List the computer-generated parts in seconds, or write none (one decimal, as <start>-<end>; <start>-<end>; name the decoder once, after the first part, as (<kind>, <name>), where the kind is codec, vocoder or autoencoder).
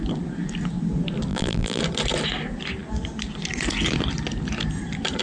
1.3-1.8 (vocoder, BigVGAN v2)